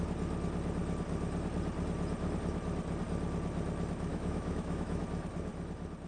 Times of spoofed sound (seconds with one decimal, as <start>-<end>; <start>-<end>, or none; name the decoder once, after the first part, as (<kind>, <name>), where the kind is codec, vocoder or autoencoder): 4.1-5.0 (autoencoder, DAC-VAE)